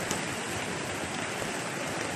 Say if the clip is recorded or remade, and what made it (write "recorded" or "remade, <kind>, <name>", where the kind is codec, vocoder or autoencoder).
recorded